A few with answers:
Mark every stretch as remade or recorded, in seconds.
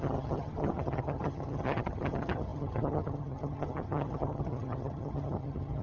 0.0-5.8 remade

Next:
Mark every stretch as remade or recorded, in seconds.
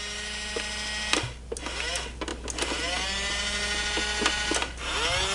0.0-5.3 recorded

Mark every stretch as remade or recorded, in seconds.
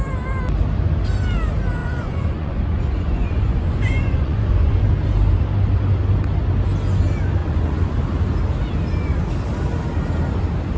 0.0-1.8 recorded; 1.8-4.8 remade; 4.8-7.4 recorded; 7.4-7.9 remade; 7.9-10.8 recorded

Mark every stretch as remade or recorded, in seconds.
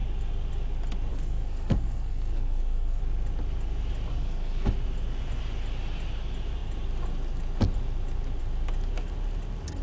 0.0-1.1 recorded; 1.1-3.0 remade; 3.0-4.1 recorded; 4.1-4.7 remade; 4.7-9.8 recorded